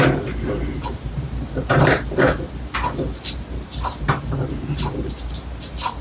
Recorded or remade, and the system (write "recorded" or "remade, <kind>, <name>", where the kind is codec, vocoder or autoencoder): remade, vocoder, BigVGAN v2